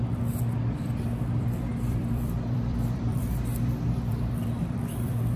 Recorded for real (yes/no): no